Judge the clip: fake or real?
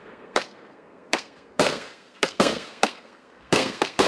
fake